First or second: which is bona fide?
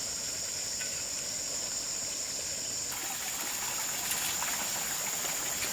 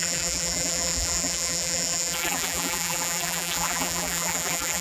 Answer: first